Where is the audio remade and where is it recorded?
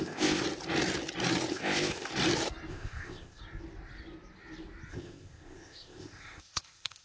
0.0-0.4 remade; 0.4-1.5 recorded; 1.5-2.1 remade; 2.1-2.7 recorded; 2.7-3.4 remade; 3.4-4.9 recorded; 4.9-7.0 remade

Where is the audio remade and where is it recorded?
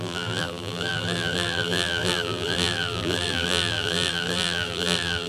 0.0-5.3 remade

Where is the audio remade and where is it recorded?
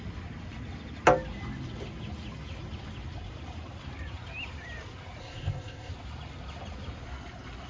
0.0-5.2 recorded; 5.2-5.9 remade; 5.9-7.7 recorded